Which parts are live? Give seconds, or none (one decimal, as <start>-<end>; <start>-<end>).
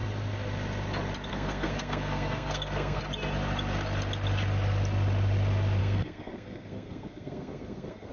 0.0-1.3; 3.0-5.8